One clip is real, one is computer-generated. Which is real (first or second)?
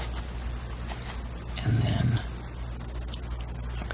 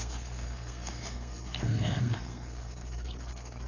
first